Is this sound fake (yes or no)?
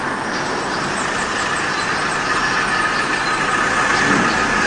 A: no